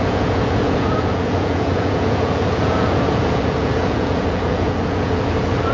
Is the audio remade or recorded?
remade